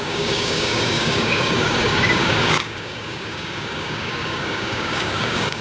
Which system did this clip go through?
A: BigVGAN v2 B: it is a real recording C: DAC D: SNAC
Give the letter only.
C